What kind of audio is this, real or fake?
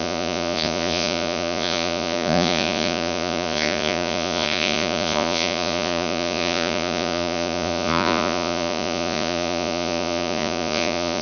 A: fake